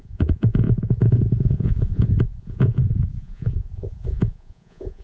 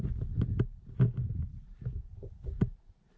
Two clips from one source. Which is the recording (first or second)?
second